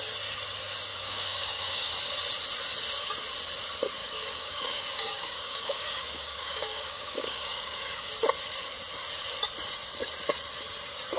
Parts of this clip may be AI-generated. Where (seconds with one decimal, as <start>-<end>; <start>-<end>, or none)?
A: 0.9-1.9; 4.0-8.1